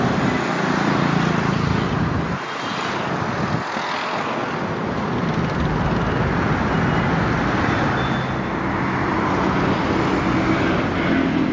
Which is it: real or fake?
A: real